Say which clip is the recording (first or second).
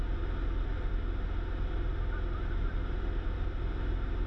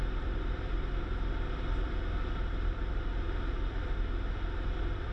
first